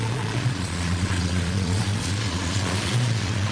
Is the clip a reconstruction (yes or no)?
yes